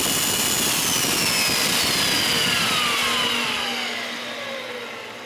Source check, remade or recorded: recorded